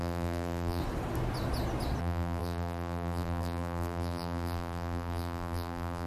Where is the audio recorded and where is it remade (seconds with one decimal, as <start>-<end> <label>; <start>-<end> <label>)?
0.0-0.8 remade; 0.8-2.0 recorded; 2.0-6.1 remade